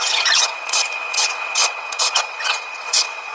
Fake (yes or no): yes